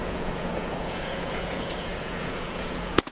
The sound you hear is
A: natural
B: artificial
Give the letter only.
B